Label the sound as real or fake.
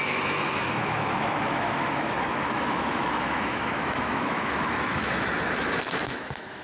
fake